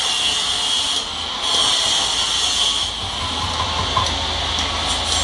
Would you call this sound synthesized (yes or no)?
no